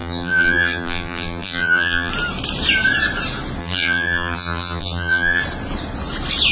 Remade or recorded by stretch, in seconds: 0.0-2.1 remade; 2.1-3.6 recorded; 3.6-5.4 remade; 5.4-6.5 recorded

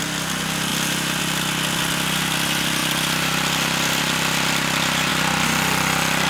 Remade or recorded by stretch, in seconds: 0.0-0.7 recorded; 0.7-1.2 remade; 1.2-5.1 recorded; 5.1-6.3 remade